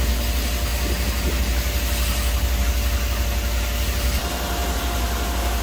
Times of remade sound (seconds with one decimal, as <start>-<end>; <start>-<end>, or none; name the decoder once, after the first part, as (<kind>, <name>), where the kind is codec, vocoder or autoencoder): none